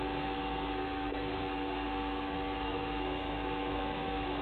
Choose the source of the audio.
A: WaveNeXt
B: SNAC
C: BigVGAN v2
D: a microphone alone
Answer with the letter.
B